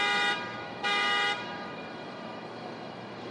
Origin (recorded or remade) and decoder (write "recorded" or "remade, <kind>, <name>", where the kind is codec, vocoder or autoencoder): remade, autoencoder, DAC-VAE